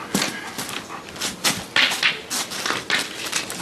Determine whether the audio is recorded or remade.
recorded